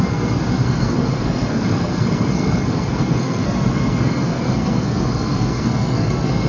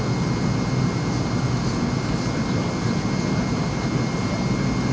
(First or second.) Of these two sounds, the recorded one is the second